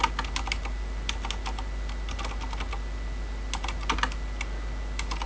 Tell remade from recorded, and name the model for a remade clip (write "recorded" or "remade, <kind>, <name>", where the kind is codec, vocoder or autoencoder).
recorded